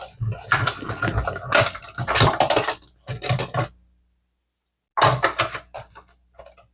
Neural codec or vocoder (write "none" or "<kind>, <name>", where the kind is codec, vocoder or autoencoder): none